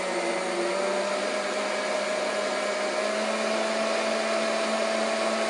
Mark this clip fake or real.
real